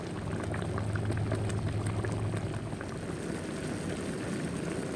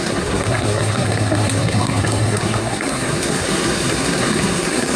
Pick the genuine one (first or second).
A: first